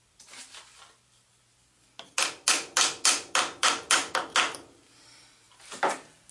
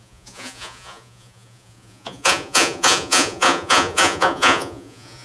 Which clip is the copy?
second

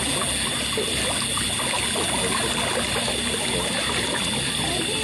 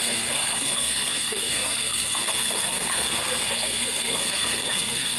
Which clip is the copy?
second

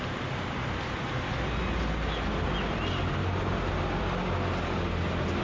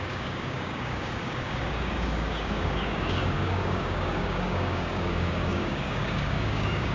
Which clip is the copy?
second